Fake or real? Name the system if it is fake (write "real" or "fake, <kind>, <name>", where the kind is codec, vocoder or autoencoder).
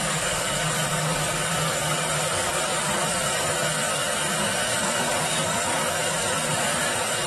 fake, codec, DAC